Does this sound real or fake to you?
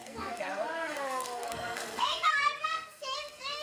fake